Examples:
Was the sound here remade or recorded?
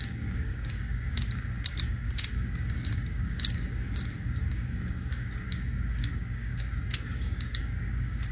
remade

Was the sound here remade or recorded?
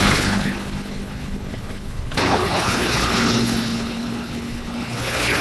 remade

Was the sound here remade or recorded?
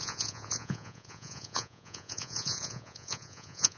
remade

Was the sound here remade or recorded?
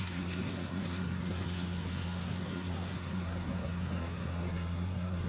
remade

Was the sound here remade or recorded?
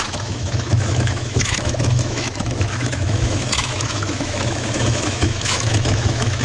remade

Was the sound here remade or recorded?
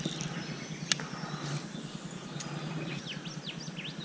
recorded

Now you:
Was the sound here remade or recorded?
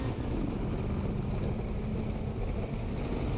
recorded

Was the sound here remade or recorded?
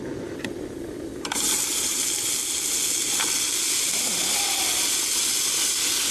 recorded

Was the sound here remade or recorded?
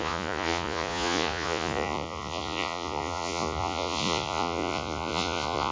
remade